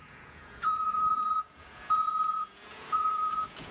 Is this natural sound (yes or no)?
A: no